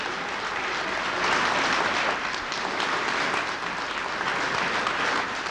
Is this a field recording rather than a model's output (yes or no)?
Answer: yes